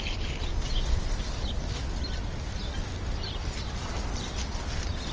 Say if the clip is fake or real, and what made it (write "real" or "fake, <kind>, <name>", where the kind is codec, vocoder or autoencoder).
real